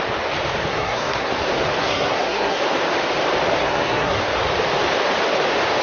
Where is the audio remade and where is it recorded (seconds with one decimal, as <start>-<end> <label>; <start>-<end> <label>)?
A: 0.0-0.7 recorded; 0.7-1.3 remade; 1.3-1.8 recorded; 1.8-2.6 remade; 2.6-3.6 recorded; 3.6-4.2 remade; 4.2-5.8 recorded